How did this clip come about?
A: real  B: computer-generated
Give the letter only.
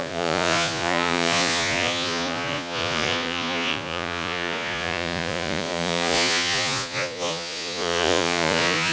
B